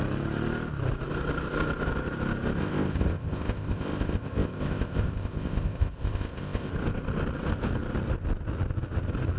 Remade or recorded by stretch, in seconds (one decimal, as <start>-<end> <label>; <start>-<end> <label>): 0.0-2.6 recorded; 2.6-6.7 remade; 6.7-9.4 recorded